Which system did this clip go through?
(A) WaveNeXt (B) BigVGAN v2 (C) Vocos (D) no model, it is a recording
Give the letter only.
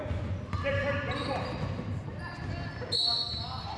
D